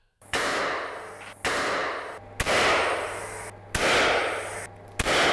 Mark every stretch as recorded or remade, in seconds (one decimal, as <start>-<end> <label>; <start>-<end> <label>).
0.0-0.6 remade; 0.6-5.3 recorded